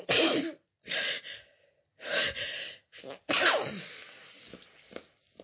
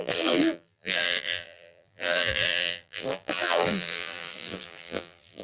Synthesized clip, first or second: second